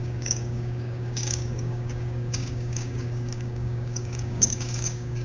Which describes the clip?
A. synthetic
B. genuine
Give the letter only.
A